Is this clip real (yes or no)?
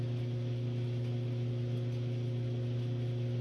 yes